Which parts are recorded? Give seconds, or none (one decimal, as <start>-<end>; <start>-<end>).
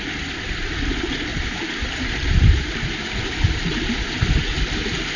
0.0-1.3; 4.4-5.2